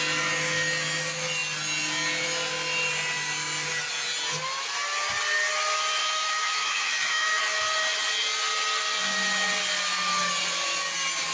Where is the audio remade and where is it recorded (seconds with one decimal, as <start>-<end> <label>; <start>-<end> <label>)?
0.0-6.0 recorded; 6.0-7.4 remade; 7.4-11.3 recorded